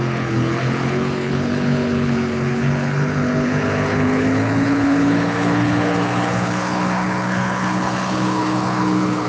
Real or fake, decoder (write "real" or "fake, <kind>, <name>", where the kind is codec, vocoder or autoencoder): fake, codec, HILCodec